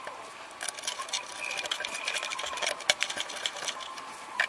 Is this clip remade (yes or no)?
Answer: no